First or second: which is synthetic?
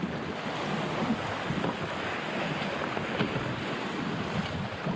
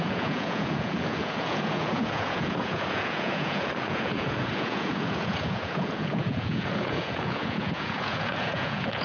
second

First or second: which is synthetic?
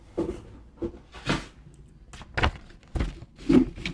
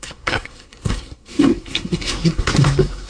second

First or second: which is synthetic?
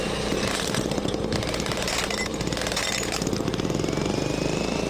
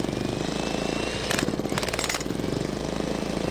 first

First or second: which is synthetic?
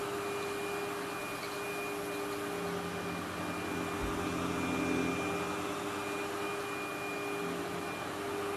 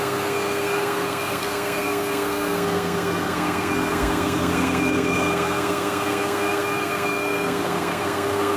second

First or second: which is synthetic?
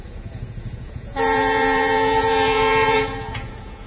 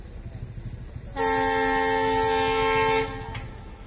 first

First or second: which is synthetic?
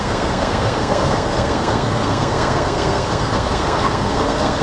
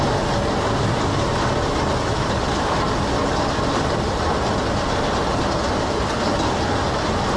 first